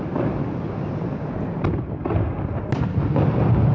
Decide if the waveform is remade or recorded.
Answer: recorded